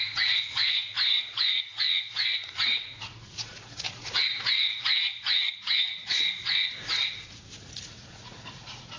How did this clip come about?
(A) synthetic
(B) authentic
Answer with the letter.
A